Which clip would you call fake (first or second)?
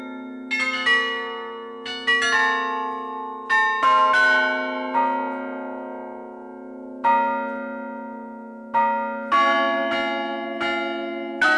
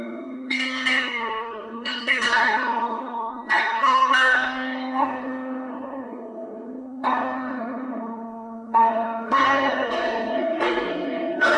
second